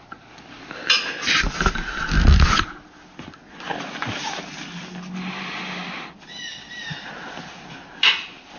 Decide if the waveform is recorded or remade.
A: recorded